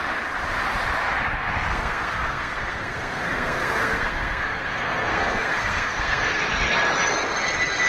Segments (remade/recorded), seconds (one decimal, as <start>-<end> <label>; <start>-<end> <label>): 0.0-1.7 recorded; 1.7-6.4 remade; 6.4-7.9 recorded